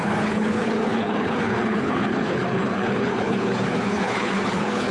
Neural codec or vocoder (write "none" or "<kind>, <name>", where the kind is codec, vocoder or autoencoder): codec, HILCodec